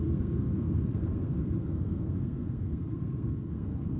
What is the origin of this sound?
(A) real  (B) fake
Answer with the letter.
B